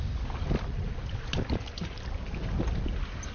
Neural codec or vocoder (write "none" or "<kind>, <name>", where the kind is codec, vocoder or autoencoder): none